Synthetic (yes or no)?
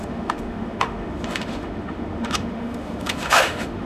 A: yes